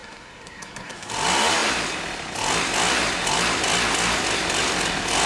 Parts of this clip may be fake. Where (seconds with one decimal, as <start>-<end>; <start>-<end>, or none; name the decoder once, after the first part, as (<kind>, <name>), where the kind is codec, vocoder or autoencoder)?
0.0-1.1 (codec, SNAC)